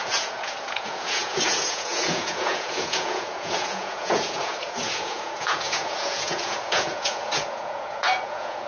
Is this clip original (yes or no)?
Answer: no